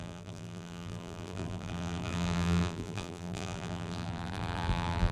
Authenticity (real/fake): fake